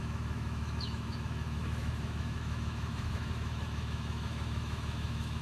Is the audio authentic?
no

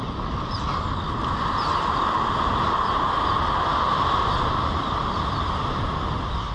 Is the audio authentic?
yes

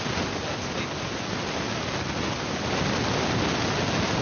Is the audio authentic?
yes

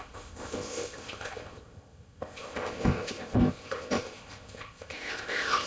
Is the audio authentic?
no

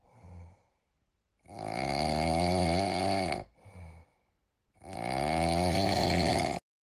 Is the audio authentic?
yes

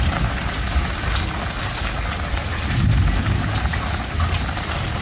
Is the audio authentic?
yes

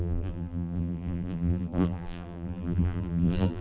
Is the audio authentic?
no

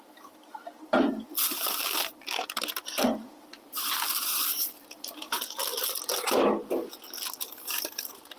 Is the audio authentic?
yes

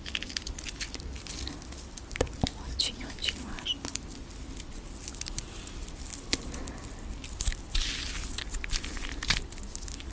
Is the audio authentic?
yes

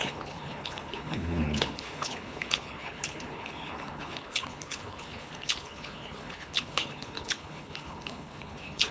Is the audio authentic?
no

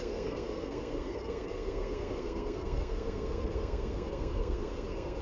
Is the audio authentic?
no